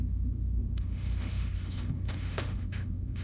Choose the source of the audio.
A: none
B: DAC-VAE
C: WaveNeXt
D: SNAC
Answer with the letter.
B